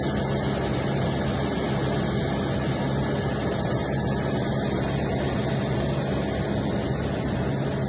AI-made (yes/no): no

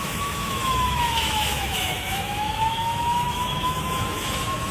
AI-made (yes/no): yes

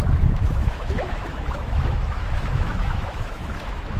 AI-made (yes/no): yes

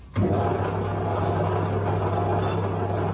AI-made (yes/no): no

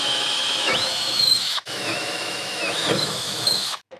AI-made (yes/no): yes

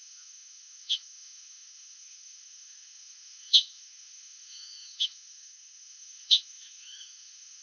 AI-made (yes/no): yes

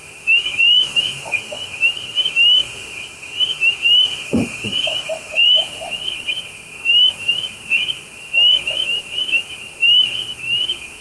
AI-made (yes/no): yes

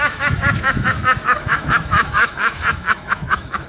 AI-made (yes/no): yes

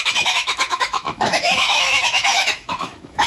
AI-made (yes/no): yes